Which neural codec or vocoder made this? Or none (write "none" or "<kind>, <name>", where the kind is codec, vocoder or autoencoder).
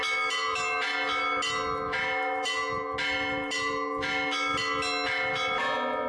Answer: none